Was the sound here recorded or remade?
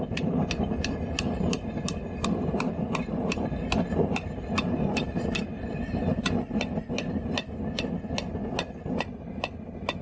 recorded